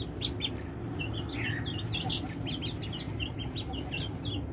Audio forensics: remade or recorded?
recorded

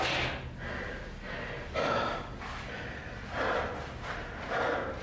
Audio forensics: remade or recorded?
recorded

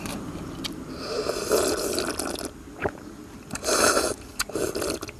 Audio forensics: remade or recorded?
recorded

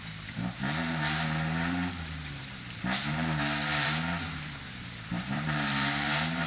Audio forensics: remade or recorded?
remade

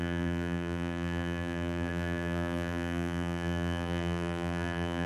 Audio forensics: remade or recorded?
remade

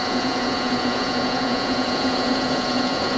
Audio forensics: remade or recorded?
remade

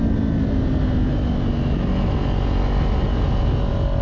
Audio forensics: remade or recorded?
recorded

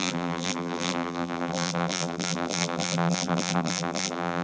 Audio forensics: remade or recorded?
remade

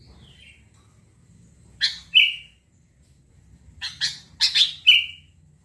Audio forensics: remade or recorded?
recorded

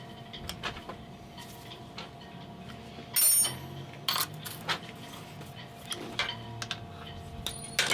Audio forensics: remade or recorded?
recorded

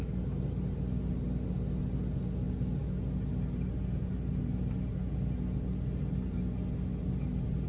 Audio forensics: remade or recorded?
recorded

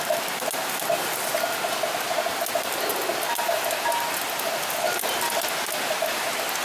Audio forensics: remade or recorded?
recorded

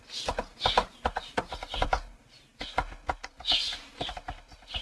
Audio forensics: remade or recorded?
recorded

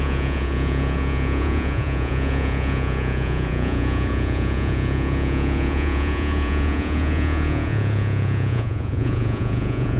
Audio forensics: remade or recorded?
remade